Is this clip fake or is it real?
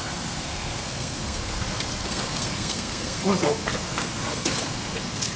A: fake